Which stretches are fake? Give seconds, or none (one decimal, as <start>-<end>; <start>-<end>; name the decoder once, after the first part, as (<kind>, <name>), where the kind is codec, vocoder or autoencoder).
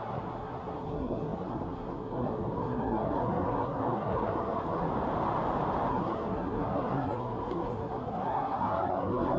0.0-4.9 (codec, SNAC); 5.9-9.4